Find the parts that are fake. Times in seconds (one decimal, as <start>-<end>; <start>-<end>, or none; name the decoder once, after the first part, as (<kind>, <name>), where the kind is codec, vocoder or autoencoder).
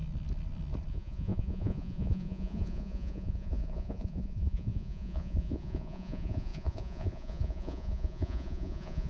0.9-9.1 (vocoder, Vocos)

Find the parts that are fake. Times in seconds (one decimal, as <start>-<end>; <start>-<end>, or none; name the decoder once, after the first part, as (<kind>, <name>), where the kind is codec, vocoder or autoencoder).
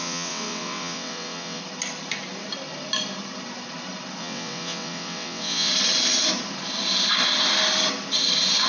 0.0-1.6 (vocoder, WaveNeXt); 4.2-5.7